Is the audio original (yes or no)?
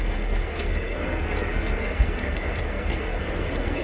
no